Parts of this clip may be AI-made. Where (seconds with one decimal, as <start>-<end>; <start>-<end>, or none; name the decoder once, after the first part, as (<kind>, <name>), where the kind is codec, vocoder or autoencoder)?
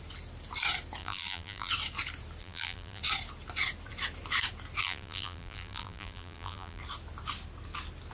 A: 1.0-1.7 (vocoder, BigVGAN v2); 2.4-3.0; 4.8-6.8